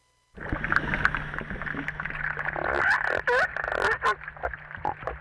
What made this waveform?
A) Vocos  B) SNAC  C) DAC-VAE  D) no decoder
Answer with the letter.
D